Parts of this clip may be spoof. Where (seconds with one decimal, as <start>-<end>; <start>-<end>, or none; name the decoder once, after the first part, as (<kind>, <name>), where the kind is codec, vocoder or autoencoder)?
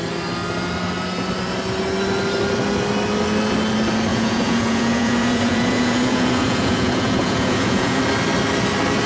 4.1-8.0 (vocoder, Vocos)